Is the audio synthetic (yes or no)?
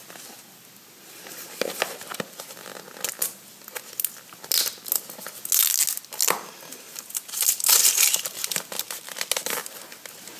no